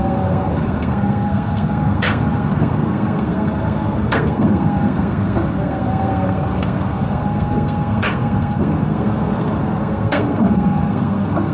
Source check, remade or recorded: remade